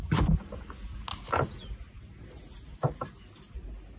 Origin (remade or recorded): recorded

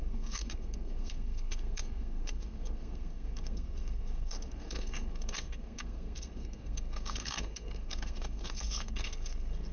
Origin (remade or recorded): remade